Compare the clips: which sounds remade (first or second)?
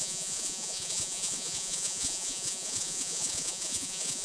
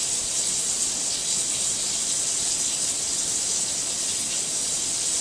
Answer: first